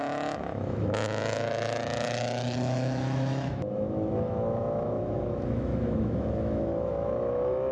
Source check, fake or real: fake